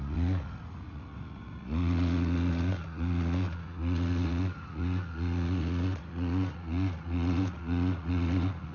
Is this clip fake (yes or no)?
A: yes